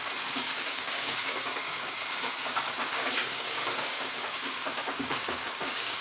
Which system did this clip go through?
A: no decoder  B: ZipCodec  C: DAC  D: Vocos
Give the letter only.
C